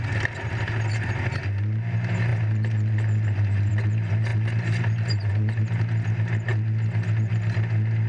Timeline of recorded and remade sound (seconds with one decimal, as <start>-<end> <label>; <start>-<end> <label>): 0.0-8.1 recorded